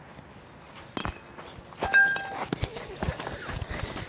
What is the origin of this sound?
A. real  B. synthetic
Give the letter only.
A